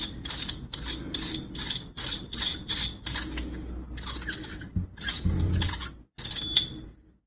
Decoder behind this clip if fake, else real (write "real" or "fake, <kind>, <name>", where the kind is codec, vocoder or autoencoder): real